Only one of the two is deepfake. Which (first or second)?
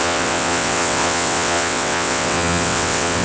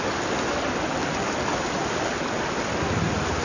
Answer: first